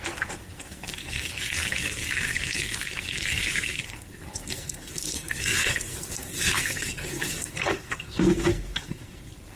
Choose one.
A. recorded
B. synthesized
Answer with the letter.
B